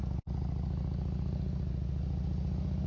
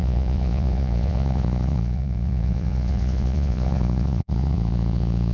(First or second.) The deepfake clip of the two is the second